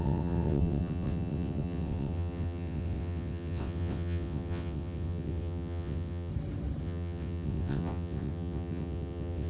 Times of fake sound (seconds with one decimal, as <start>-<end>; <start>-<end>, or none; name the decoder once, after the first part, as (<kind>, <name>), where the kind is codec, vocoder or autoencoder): 0.0-6.3 (vocoder, WaveNeXt); 6.8-9.5